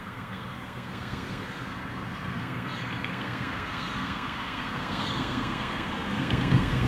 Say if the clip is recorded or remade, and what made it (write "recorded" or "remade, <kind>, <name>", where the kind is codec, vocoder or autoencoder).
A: remade, codec, SNAC